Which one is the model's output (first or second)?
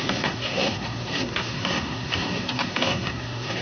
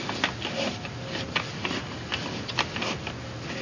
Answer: first